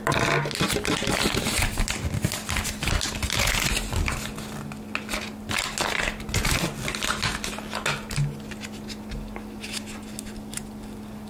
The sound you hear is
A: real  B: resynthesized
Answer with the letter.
A